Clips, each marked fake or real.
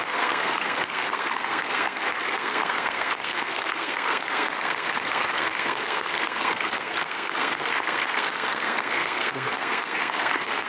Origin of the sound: fake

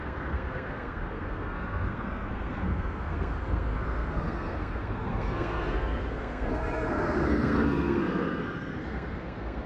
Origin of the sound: fake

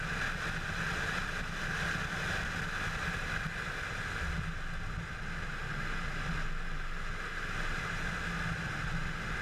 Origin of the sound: real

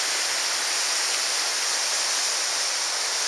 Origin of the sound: real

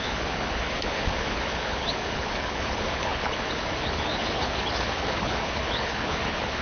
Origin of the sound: fake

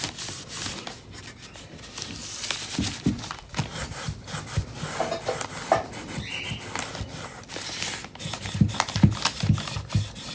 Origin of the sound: real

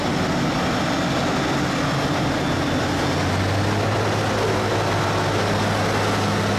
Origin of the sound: real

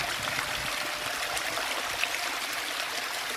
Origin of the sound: real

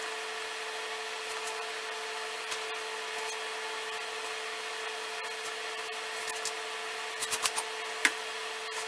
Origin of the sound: real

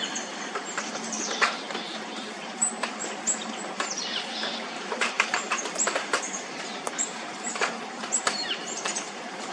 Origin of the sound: fake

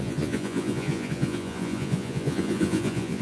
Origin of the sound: fake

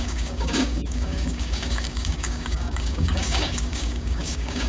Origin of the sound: fake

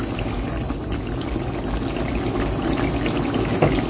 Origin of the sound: real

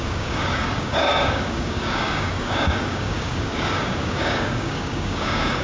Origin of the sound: fake